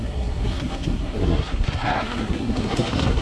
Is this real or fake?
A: fake